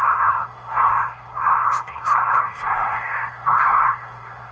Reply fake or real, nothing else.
fake